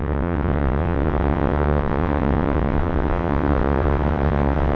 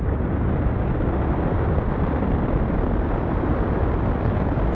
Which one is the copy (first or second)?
first